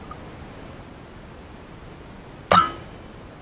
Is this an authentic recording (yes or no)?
yes